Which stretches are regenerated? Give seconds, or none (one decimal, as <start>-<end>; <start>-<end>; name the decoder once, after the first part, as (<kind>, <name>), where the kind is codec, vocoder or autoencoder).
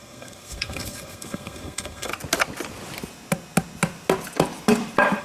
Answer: 0.0-2.1 (codec, SNAC)